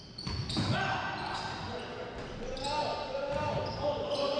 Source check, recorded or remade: recorded